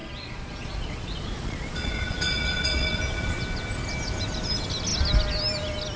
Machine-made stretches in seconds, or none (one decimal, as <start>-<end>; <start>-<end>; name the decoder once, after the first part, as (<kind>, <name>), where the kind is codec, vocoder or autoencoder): 0.0-3.4 (vocoder, Vocos)